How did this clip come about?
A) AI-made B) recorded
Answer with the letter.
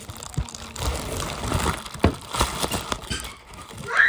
B